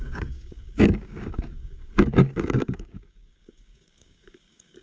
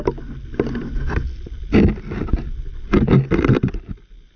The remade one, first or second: first